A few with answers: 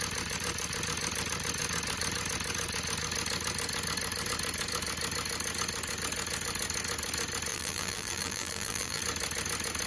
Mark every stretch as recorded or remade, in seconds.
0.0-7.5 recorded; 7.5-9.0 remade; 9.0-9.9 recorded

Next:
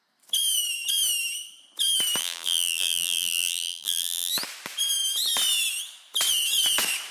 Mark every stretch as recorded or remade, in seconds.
0.0-2.2 recorded; 2.2-4.3 remade; 4.3-7.1 recorded